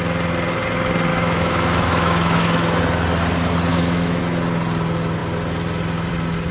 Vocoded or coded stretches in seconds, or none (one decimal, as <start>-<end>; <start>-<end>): 1.1-2.8; 3.7-4.2